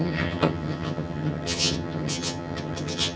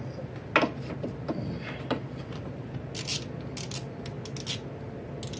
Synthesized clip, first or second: first